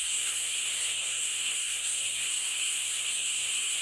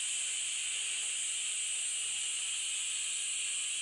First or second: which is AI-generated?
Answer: first